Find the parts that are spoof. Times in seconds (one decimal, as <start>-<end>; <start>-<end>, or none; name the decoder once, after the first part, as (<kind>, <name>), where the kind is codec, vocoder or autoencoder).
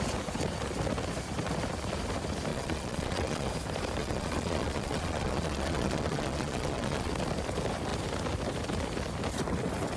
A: 2.5-3.5 (vocoder, Vocos); 4.0-7.1